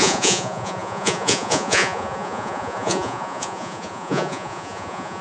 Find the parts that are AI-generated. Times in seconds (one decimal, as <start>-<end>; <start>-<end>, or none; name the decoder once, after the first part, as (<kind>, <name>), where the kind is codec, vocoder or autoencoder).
0.0-5.2 (vocoder, Vocos)